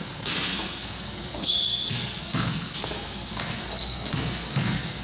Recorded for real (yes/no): no